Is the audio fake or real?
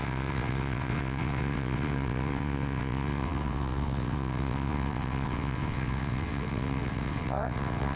fake